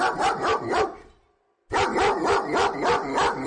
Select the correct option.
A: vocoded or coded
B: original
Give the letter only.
B